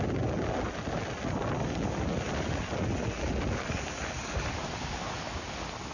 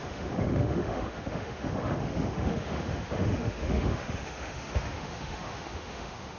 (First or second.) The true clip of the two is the first